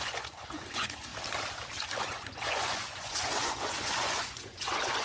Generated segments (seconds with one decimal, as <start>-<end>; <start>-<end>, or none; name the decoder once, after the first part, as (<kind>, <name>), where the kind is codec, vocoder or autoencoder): 0.0-1.1 (vocoder, Vocos); 1.9-5.0